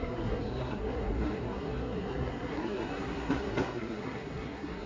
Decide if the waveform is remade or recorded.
remade